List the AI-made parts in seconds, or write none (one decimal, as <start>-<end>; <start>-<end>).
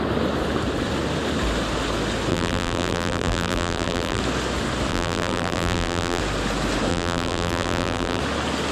2.3-4.2; 4.9-6.2; 6.9-8.2